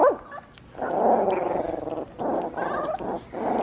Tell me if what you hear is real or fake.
real